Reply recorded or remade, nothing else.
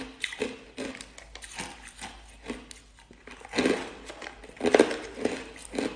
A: recorded